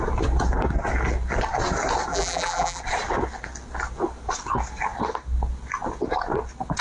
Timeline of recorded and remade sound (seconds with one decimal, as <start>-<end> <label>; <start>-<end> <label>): 0.0-2.1 recorded; 2.1-2.8 remade; 2.8-6.8 recorded